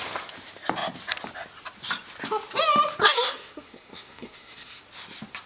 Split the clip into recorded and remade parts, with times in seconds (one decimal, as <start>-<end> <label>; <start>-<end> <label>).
0.0-3.0 recorded; 3.0-4.8 remade; 4.8-5.5 recorded